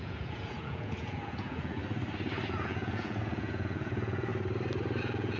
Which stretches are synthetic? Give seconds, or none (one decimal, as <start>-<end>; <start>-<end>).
0.0-1.8; 2.5-4.3; 5.0-5.4